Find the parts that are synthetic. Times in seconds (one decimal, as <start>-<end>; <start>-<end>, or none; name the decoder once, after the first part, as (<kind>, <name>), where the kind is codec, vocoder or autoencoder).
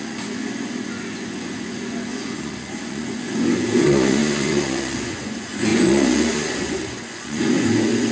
0.0-8.1 (vocoder, Vocos)